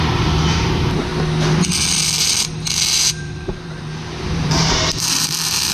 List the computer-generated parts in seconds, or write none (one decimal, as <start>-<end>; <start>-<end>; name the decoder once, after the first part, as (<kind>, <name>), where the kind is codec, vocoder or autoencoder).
0.0-1.1 (vocoder, BigVGAN v2); 3.1-5.7

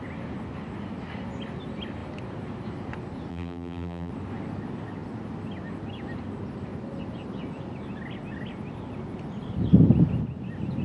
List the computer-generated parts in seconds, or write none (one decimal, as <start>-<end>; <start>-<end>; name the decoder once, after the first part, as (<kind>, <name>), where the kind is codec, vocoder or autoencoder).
3.3-4.1 (vocoder, BigVGAN v2)